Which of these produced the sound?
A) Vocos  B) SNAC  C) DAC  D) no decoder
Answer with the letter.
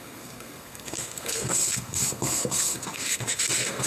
B